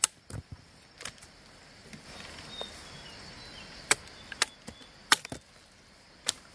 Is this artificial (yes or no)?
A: no